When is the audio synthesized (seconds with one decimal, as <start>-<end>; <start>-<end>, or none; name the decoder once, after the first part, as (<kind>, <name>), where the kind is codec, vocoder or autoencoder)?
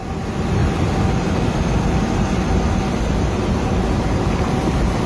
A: 0.0-0.6 (vocoder, BigVGAN v2); 3.0-5.1